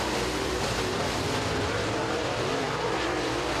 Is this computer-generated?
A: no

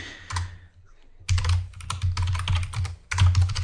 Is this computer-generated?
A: no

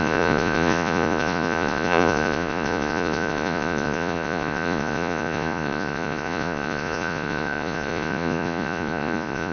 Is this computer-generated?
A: yes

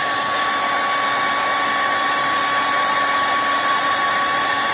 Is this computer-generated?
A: no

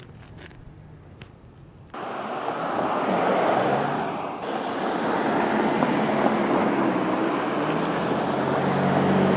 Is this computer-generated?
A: no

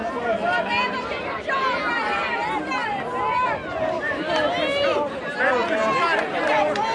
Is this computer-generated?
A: yes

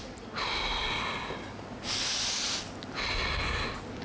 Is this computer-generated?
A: no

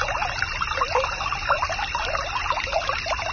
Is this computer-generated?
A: no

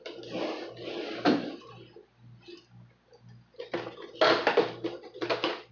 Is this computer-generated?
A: no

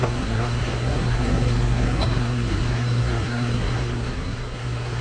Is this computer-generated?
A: yes